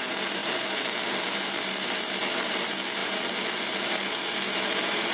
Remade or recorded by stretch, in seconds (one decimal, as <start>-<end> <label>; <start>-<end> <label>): 0.0-5.1 remade